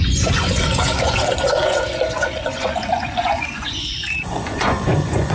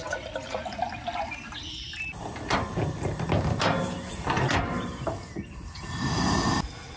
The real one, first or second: second